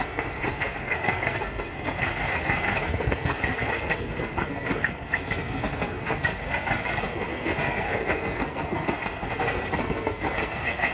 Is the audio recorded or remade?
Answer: remade